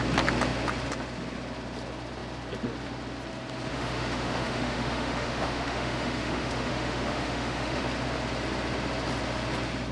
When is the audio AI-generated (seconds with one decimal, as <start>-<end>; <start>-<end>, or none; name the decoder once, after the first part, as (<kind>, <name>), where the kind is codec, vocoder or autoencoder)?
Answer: 3.7-7.8 (autoencoder, DAC-VAE)